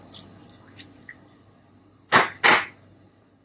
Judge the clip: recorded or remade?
recorded